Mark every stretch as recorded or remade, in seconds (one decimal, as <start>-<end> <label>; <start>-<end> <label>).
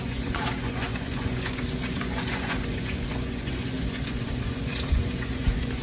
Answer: 0.0-5.8 remade